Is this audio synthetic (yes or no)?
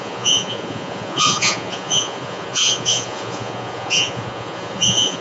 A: yes